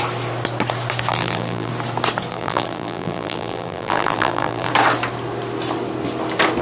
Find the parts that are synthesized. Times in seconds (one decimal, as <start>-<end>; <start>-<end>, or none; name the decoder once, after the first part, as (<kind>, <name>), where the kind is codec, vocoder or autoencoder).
1.1-1.7 (vocoder, BigVGAN v2); 2.3-4.7